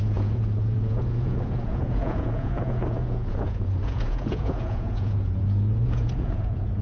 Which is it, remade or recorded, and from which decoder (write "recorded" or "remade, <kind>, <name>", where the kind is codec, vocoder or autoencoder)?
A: remade, vocoder, Vocos